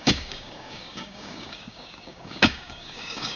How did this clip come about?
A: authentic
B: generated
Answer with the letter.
B